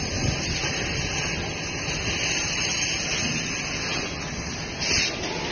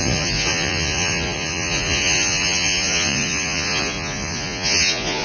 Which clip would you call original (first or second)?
first